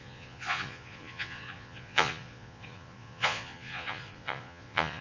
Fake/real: fake